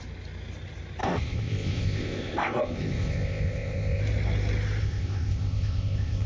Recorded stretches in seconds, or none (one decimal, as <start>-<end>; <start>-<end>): 0.0-1.0; 4.0-4.8